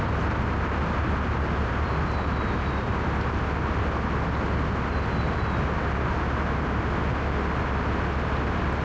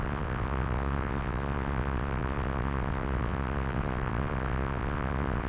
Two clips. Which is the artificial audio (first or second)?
second